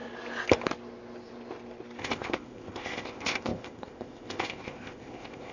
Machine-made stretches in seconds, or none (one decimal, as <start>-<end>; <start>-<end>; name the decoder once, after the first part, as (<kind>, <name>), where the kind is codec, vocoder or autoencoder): 2.0-5.5 (codec, ZipCodec)